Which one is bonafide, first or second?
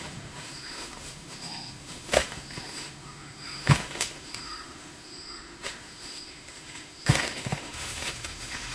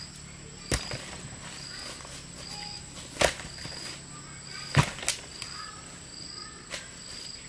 second